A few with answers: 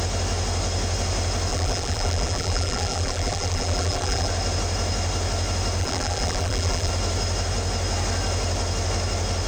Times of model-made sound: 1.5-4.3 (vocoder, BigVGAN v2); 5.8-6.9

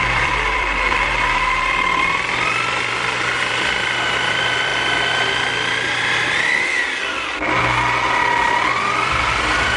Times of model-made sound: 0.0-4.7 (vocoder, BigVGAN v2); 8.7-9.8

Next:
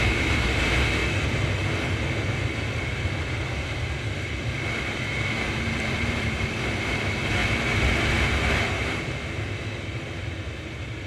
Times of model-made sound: 0.0-1.0 (vocoder, BigVGAN v2); 4.1-7.4